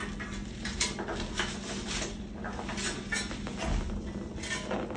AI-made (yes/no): no